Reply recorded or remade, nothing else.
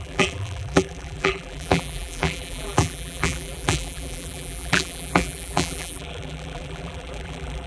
remade